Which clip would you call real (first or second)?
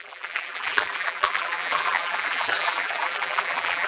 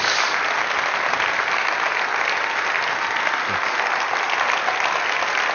second